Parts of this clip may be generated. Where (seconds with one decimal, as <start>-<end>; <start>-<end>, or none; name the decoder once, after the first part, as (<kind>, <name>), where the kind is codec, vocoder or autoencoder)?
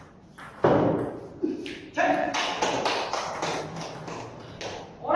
2.2-2.8 (vocoder, WaveNeXt)